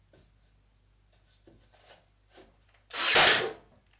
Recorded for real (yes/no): yes